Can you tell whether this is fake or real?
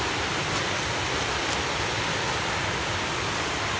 real